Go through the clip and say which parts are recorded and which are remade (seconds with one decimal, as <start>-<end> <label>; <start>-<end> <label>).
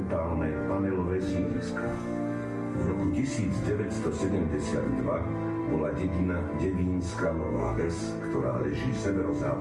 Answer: 0.0-1.3 recorded; 1.3-3.1 remade; 3.1-7.2 recorded; 7.2-8.0 remade; 8.0-9.6 recorded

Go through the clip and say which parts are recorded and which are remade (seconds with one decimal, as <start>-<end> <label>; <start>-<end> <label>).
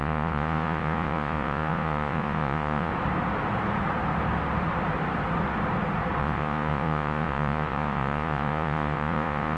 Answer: 0.0-2.9 remade; 2.9-6.2 recorded; 6.2-9.6 remade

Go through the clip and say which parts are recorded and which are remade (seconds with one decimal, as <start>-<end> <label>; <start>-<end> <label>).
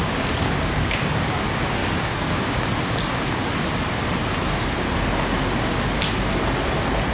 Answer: 0.0-1.1 remade; 1.1-1.8 recorded; 1.8-2.6 remade; 2.6-7.1 recorded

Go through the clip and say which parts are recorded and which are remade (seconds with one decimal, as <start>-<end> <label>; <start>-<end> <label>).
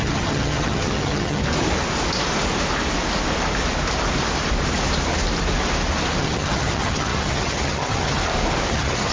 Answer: 0.0-1.4 remade; 1.4-6.2 recorded; 6.2-8.2 remade; 8.2-8.7 recorded; 8.7-9.1 remade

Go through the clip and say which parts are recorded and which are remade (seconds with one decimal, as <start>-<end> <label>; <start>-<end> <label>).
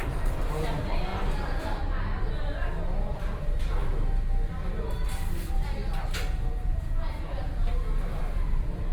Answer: 0.0-1.1 remade; 1.1-2.4 recorded; 2.4-3.9 remade; 3.9-4.9 recorded; 4.9-5.8 remade; 5.8-6.5 recorded; 6.5-7.7 remade; 7.7-8.2 recorded; 8.2-8.9 remade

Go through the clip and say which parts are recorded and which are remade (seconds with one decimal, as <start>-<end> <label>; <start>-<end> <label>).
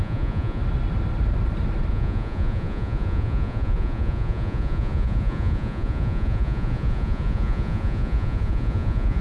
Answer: 0.0-0.6 remade; 0.6-1.9 recorded; 1.9-9.2 remade